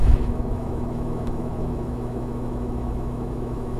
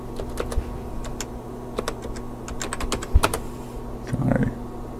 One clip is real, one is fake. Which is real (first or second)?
second